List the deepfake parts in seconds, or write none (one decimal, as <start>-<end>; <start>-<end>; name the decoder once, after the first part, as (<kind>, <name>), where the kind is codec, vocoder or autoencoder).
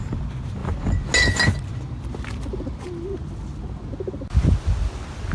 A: 0.6-1.1 (vocoder, BigVGAN v2)